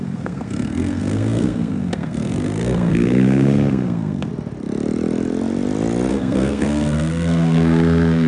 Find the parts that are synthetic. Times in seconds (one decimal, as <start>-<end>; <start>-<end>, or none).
0.0-4.3; 6.1-8.3